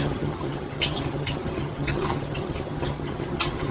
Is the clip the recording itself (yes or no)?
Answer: no